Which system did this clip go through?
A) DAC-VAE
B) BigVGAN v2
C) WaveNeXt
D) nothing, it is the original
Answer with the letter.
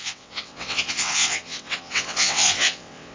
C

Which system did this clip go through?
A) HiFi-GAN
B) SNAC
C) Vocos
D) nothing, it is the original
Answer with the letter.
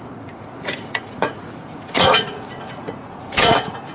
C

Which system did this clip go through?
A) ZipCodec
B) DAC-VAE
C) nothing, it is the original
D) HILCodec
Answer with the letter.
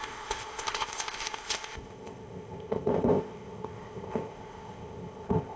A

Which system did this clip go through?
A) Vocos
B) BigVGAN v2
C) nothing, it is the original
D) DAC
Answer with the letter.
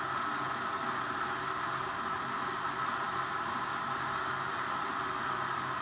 C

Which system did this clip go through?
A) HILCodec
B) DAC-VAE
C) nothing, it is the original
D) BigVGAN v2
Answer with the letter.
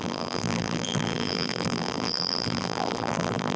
D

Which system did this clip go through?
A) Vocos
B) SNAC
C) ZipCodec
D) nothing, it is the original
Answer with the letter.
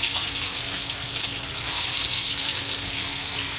B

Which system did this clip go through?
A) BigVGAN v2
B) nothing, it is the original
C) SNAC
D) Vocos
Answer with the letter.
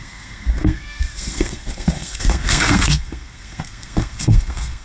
C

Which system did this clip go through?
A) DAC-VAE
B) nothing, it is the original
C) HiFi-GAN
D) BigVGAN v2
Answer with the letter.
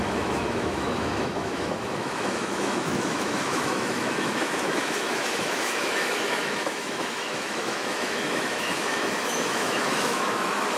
A